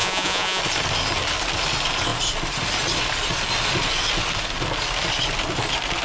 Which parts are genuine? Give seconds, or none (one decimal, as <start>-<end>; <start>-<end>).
0.6-6.0